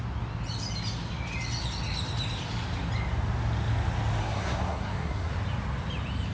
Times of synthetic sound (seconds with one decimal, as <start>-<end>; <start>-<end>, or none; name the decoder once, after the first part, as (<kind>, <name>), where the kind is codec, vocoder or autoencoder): 4.2-5.3 (codec, SNAC)